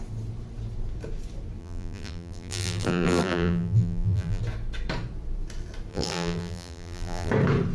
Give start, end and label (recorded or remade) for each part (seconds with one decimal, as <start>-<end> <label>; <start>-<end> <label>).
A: 0.0-1.6 recorded; 1.6-4.4 remade; 4.4-5.9 recorded; 5.9-7.3 remade; 7.3-7.7 recorded